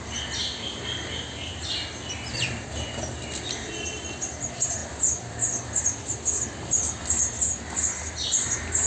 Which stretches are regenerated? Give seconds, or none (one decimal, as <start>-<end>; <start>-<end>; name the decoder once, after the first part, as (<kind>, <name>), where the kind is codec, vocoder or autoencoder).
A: none